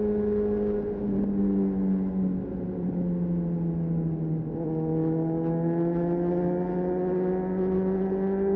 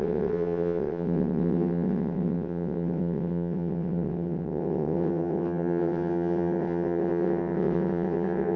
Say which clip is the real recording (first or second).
first